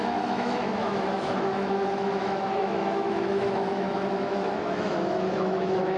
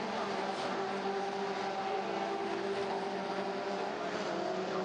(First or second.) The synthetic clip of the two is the first